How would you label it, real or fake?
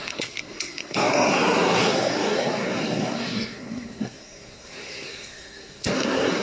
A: fake